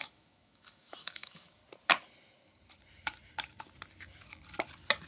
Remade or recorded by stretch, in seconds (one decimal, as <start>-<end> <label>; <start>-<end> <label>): 0.0-1.6 remade; 1.6-5.1 recorded